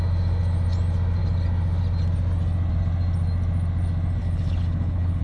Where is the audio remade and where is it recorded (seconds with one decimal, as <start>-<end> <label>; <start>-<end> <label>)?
0.0-4.2 recorded; 4.2-5.2 remade